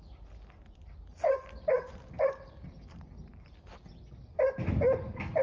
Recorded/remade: recorded